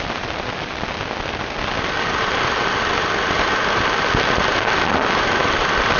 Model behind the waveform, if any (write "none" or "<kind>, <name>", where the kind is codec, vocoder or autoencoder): none